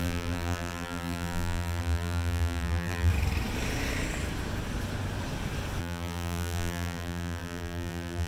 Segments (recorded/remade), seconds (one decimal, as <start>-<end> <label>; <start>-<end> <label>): 0.0-3.1 remade; 3.1-5.8 recorded; 5.8-8.3 remade